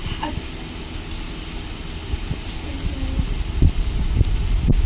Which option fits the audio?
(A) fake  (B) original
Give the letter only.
B